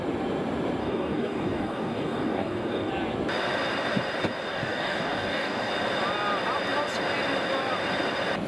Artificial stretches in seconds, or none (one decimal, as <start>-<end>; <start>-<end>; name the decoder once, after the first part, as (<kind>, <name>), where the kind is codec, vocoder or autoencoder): 0.8-2.9 (codec, DAC); 4.5-5.7